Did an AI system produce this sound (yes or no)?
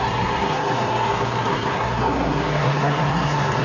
yes